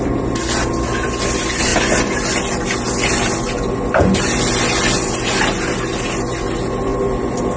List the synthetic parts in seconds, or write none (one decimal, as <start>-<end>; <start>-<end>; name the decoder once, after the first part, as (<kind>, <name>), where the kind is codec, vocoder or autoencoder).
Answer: none